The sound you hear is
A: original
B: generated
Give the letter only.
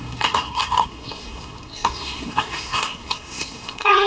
B